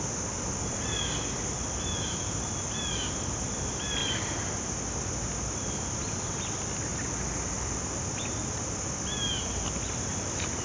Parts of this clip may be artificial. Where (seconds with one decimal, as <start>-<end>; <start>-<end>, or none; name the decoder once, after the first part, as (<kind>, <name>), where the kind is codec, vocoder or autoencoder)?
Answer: none